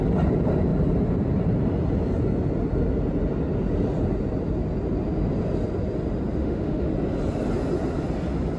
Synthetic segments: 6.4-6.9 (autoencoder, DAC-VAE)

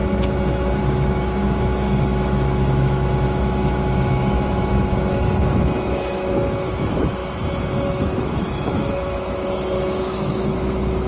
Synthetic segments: 0.8-7.2 (autoencoder, DAC-VAE); 7.9-11.1

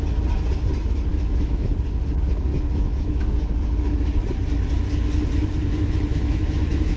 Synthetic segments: 1.1-1.7 (autoencoder, DAC-VAE); 2.5-3.2; 6.1-7.0

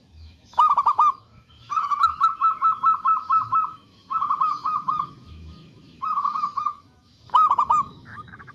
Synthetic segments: 0.0-8.5 (autoencoder, DAC-VAE)